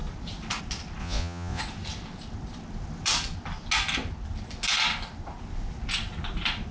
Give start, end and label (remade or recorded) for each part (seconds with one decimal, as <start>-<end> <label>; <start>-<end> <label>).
0.0-1.0 recorded; 1.0-1.6 remade; 1.6-6.7 recorded